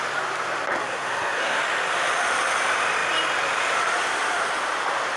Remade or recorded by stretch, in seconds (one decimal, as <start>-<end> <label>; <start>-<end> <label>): 0.0-0.8 recorded; 0.8-1.6 remade; 1.6-5.2 recorded